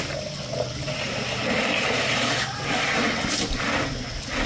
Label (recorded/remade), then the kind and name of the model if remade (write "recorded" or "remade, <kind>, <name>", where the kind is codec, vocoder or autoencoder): recorded